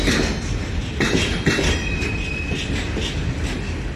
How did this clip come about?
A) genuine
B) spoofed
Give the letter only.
A